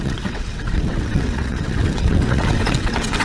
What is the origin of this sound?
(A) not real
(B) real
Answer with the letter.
A